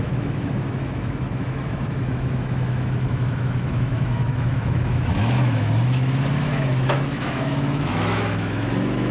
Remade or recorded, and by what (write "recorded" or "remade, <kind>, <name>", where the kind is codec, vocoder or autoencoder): remade, autoencoder, DAC-VAE